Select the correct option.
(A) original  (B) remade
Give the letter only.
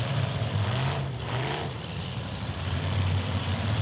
B